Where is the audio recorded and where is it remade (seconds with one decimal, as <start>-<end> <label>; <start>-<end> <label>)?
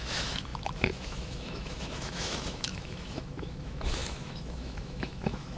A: 0.0-5.6 remade